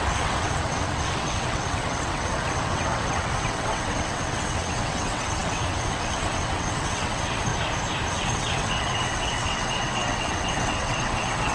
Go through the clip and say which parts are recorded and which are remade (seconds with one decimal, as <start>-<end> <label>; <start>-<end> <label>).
0.0-7.5 remade; 7.5-8.1 recorded; 8.1-11.5 remade